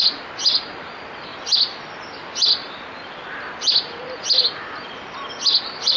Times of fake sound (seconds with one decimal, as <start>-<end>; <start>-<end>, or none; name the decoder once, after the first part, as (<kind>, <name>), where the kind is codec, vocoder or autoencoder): none